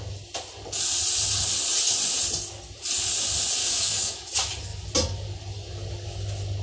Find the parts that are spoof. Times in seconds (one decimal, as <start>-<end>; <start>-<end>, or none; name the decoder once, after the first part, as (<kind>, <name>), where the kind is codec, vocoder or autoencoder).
3.6-4.3 (autoencoder, DAC-VAE)